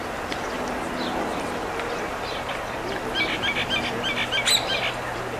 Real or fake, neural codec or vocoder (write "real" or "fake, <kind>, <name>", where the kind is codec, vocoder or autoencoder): real